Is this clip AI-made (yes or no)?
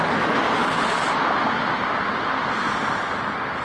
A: no